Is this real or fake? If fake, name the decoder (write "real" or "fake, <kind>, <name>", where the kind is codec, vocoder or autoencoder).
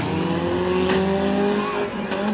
real